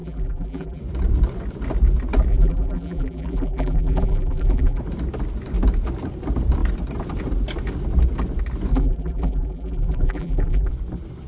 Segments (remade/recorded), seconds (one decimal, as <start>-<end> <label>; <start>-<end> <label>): 0.0-0.8 remade; 0.8-2.3 recorded; 2.3-4.8 remade; 4.8-8.7 recorded; 8.7-10.7 remade; 10.7-11.3 recorded